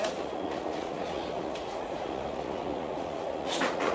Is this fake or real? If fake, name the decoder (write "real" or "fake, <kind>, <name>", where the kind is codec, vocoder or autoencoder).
fake, vocoder, Vocos